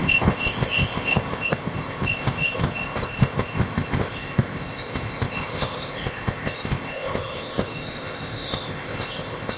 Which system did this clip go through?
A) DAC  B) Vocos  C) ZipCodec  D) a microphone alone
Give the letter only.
C